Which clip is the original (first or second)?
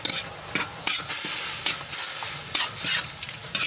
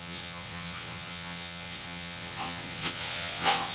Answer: first